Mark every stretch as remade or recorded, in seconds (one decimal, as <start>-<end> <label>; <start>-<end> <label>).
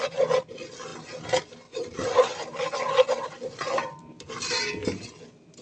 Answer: 0.0-5.6 recorded